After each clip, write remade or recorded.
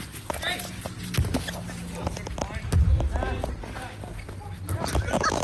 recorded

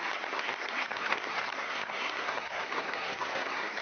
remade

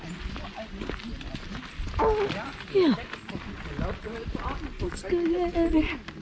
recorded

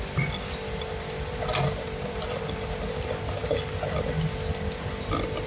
recorded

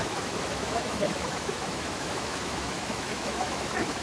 remade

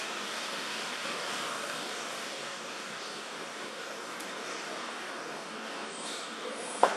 remade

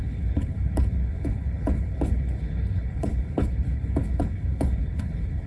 remade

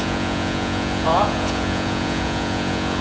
remade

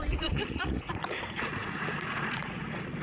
remade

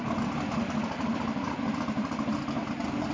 recorded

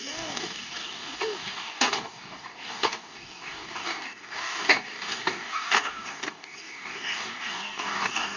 remade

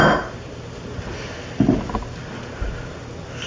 recorded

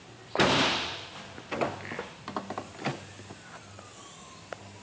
recorded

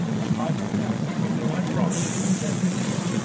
remade